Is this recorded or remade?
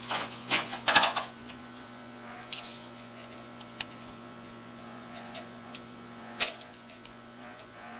remade